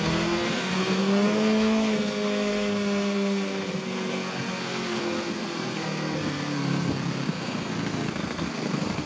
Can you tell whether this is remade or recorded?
remade